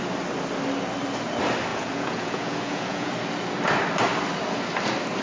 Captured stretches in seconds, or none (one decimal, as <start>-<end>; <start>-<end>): 0.0-1.7; 3.1-5.2